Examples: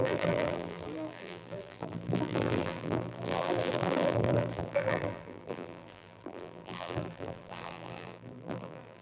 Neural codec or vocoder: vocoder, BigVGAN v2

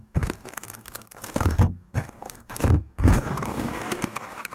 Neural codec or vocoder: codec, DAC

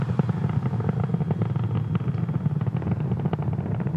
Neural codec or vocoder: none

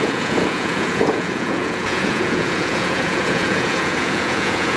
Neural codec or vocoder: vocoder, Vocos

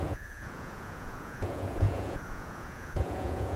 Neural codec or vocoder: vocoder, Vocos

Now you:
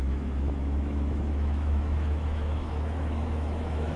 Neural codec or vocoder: autoencoder, DAC-VAE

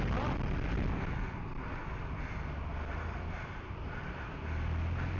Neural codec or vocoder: none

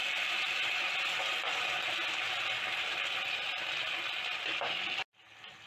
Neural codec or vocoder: none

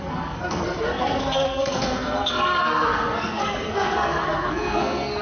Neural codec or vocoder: codec, SNAC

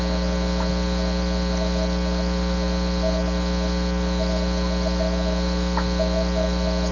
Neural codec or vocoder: none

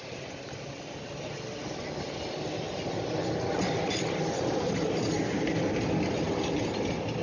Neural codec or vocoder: none